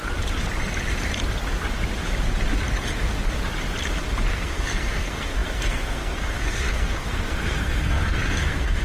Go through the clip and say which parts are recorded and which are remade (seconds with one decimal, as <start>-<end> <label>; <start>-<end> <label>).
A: 0.0-4.3 recorded; 4.3-8.8 remade